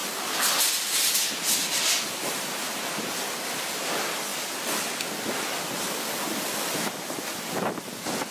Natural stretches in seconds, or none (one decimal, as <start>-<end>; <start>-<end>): 0.0-8.3